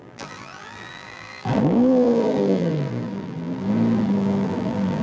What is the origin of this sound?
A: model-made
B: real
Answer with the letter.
A